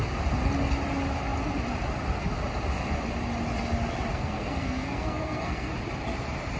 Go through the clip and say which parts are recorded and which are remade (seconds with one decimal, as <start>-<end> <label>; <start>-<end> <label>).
0.0-4.1 recorded; 4.1-5.7 remade; 5.7-6.6 recorded